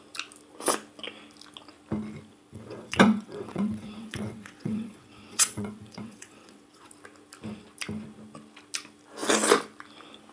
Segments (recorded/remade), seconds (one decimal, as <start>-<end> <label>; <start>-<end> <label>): 0.0-2.3 recorded; 2.3-6.9 remade; 6.9-10.3 recorded

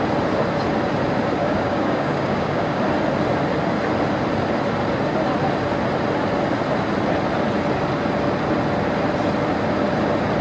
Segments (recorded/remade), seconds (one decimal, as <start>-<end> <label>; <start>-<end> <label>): 0.0-1.4 recorded; 1.4-2.8 remade; 2.8-10.4 recorded

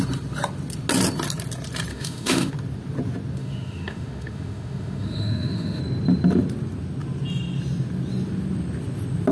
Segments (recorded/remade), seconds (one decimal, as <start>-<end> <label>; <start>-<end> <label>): 0.0-1.9 recorded; 1.9-2.5 remade; 2.5-3.4 recorded; 3.4-5.8 remade; 5.8-9.3 recorded

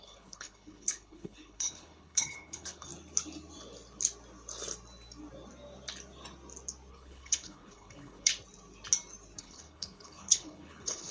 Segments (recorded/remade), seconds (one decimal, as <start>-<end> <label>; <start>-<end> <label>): 0.0-2.9 remade; 2.9-6.9 recorded; 6.9-8.3 remade; 8.3-9.4 recorded; 9.4-11.1 remade

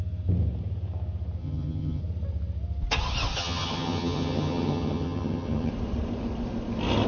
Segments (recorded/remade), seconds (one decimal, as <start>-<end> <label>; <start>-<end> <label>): 0.0-1.4 recorded; 1.4-2.0 remade; 2.0-3.4 recorded; 3.4-5.7 remade; 5.7-7.1 recorded

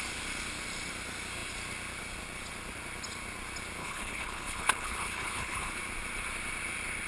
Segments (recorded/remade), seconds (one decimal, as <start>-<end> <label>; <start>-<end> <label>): 0.0-3.8 recorded; 3.8-5.7 remade; 5.7-7.1 recorded

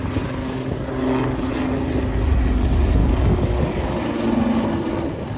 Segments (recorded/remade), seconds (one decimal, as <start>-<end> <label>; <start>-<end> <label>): 0.0-0.4 recorded; 0.4-0.9 remade; 0.9-3.0 recorded; 3.0-4.1 remade; 4.1-5.4 recorded